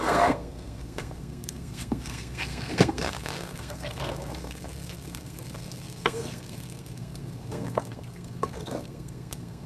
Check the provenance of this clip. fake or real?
fake